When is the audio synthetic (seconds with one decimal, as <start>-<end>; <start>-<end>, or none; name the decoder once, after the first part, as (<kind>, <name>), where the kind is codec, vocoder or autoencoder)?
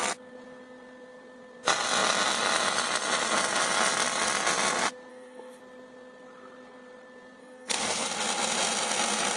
5.1-5.6 (codec, SNAC); 7.4-8.1